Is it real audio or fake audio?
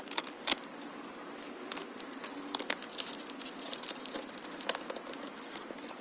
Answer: real